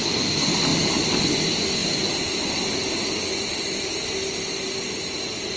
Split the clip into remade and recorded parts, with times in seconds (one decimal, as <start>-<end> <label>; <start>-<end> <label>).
0.0-1.8 recorded; 1.8-4.6 remade; 4.6-5.6 recorded